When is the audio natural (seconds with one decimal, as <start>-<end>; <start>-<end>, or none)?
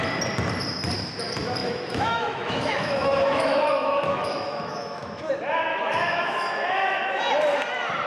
0.0-1.6; 5.3-5.7; 7.2-8.1